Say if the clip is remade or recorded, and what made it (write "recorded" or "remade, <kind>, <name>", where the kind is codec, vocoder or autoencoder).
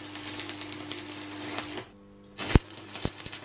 recorded